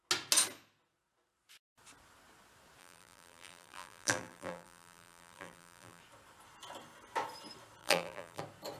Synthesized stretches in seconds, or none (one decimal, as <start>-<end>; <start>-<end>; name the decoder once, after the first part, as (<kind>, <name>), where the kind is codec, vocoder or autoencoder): 2.8-6.0 (vocoder, BigVGAN v2); 7.8-8.4